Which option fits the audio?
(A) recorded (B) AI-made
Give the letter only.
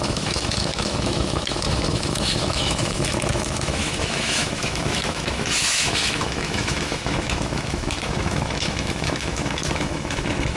B